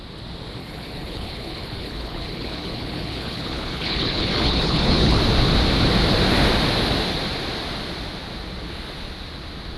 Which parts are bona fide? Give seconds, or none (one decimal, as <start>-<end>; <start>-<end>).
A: 0.0-0.6; 5.2-9.8